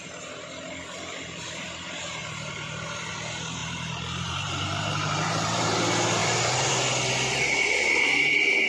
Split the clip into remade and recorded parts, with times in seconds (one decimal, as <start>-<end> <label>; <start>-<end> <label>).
0.0-3.6 recorded; 3.6-5.8 remade; 5.8-6.2 recorded; 6.2-6.7 remade; 6.7-8.7 recorded